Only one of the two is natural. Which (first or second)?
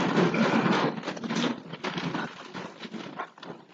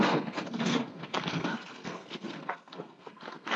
first